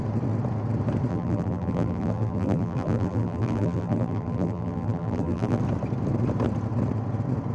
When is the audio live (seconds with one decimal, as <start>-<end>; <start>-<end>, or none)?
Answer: 0.0-1.1; 5.6-7.5